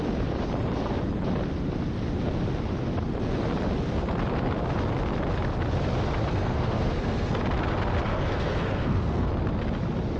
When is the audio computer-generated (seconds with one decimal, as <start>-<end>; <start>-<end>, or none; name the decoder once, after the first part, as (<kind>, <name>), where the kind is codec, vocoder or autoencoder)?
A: 6.3-7.4 (codec, SNAC); 8.1-9.3